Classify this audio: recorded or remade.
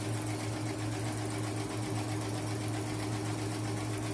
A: recorded